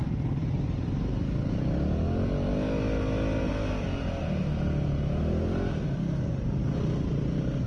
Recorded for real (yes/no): yes